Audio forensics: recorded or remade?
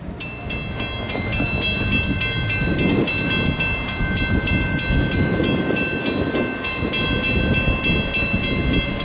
recorded